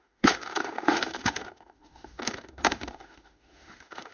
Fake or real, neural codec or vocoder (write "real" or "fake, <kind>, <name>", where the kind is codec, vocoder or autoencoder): fake, autoencoder, DAC-VAE